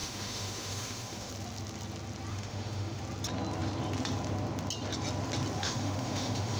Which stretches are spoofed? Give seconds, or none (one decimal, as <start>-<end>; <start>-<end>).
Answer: 0.0-1.3; 2.3-3.0; 5.6-6.6